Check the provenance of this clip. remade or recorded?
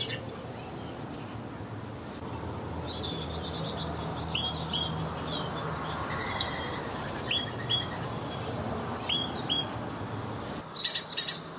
recorded